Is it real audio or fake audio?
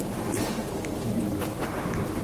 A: real